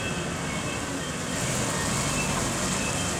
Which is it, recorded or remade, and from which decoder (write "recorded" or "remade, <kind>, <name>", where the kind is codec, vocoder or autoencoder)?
recorded